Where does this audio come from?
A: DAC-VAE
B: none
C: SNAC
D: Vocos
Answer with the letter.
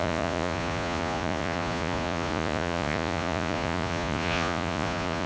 D